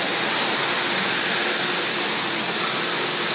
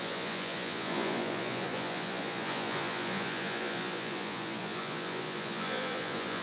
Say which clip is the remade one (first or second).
second